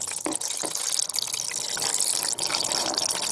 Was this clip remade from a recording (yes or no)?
no